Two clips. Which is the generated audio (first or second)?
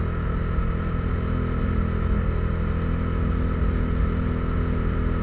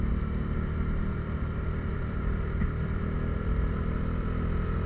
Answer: second